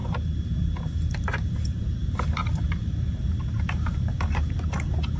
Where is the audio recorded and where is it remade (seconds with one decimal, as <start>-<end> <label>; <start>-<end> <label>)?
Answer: 0.0-5.2 remade